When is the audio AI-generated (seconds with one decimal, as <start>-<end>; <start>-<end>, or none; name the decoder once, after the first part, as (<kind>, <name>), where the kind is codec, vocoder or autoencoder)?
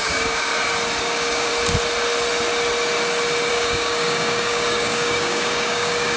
0.0-0.5 (codec, DAC); 1.0-1.5; 3.5-6.2